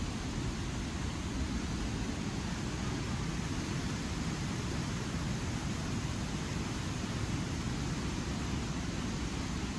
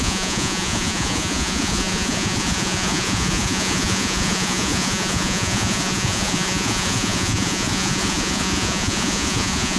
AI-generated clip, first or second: second